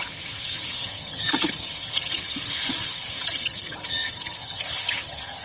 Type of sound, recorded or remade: remade